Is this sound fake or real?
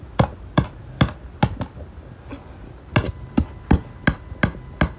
real